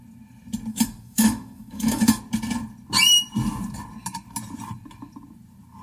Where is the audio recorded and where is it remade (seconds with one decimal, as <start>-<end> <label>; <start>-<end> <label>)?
0.0-0.7 recorded; 0.7-2.2 remade; 2.2-5.8 recorded